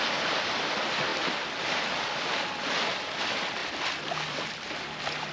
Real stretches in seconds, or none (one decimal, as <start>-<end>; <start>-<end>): 0.0-1.1; 2.7-3.6; 4.7-5.3